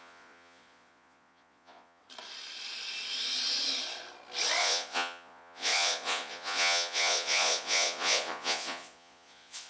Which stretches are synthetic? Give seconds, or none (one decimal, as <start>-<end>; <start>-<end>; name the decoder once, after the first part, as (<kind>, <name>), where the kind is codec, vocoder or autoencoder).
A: 0.0-2.0 (vocoder, Vocos); 4.6-9.7